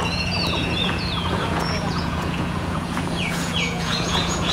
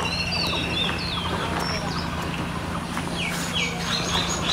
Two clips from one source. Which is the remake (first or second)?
first